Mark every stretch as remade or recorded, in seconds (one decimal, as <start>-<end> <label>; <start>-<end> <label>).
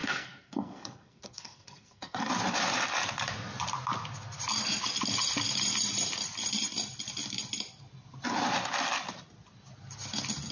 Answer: 0.0-2.3 remade; 2.3-10.5 recorded